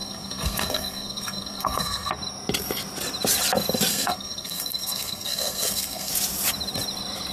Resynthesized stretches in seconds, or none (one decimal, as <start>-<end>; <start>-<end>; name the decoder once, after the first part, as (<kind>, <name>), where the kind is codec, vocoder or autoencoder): 0.0-2.1 (codec, SNAC); 3.9-6.1